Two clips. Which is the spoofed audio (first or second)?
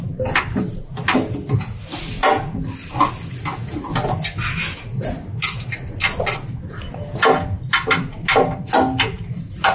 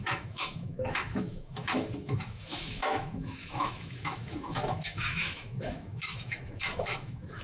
second